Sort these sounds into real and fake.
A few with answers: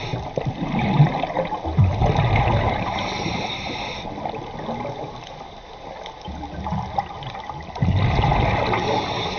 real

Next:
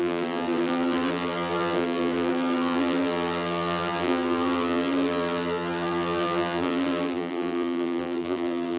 fake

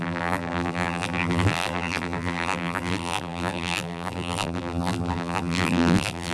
fake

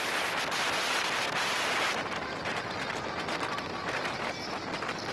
real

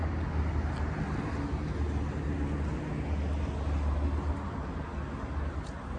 real